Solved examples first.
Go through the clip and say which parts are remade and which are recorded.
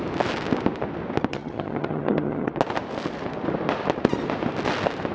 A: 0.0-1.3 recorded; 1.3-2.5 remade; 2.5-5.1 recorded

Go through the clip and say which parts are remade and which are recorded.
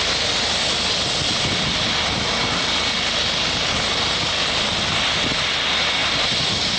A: 0.0-6.8 recorded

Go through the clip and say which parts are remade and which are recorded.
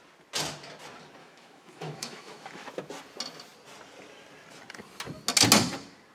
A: 0.0-1.2 recorded; 1.2-2.8 remade; 2.8-6.1 recorded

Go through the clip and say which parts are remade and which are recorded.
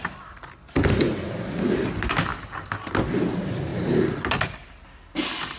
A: 0.0-3.7 recorded; 3.7-4.2 remade; 4.2-5.6 recorded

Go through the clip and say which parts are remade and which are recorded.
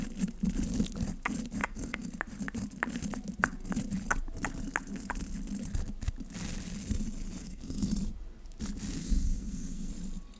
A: 0.0-1.6 recorded; 1.6-2.1 remade; 2.1-7.4 recorded; 7.4-7.9 remade; 7.9-9.0 recorded; 9.0-9.9 remade; 9.9-10.4 recorded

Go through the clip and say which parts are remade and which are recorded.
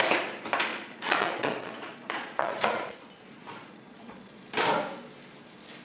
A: 0.0-0.7 recorded; 0.7-4.2 remade; 4.2-5.8 recorded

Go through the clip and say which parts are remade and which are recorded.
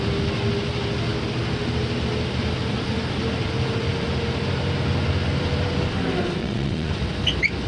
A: 0.0-6.4 recorded; 6.4-6.9 remade; 6.9-7.7 recorded